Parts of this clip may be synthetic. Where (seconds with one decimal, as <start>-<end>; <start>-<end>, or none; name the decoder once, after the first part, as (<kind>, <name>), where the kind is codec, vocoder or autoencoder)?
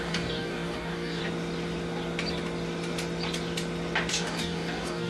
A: 0.0-1.2 (codec, DAC); 4.1-5.1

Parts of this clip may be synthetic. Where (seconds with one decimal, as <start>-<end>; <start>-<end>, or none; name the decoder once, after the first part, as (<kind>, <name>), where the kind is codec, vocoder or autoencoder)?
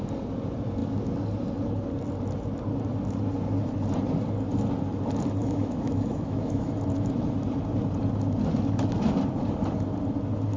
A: 5.4-6.7 (autoencoder, DAC-VAE)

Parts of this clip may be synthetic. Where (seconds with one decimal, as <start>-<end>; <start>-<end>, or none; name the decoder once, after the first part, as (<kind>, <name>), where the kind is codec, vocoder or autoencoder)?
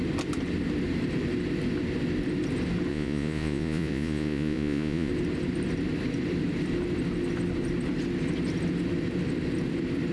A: 2.9-5.1 (vocoder, Vocos)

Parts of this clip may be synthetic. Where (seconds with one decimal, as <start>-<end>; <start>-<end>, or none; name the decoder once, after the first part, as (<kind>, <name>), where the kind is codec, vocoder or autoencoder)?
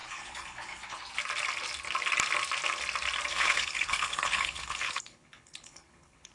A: 0.0-1.0 (codec, HILCodec); 3.3-6.3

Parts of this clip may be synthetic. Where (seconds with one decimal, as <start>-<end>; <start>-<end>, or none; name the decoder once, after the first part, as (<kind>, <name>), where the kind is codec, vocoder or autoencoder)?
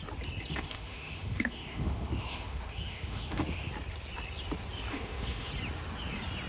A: 0.5-3.7 (autoencoder, DAC-VAE); 4.9-5.5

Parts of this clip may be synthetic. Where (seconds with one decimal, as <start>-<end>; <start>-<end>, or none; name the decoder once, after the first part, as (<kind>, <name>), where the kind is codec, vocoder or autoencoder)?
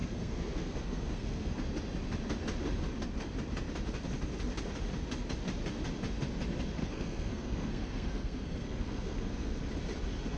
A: 0.0-1.5 (codec, SNAC); 6.8-9.6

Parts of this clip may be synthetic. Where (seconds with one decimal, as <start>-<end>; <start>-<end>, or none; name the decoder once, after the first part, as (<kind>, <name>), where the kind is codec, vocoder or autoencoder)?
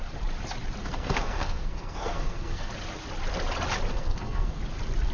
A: 0.8-2.7 (codec, SNAC); 3.9-4.6